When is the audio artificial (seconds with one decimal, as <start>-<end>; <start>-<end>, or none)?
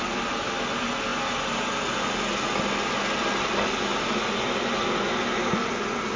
none